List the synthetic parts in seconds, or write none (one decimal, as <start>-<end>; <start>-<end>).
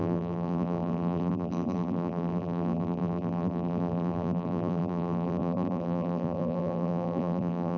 0.0-7.8